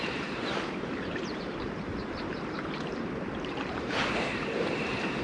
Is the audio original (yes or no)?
no